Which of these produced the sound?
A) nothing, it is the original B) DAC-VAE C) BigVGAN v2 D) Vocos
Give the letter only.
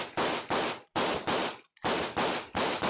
A